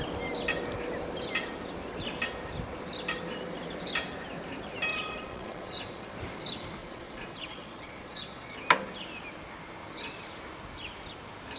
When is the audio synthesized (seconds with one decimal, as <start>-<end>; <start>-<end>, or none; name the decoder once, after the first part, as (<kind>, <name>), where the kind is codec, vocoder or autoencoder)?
4.9-6.1 (vocoder, Vocos); 6.8-8.6